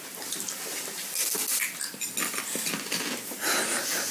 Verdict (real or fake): real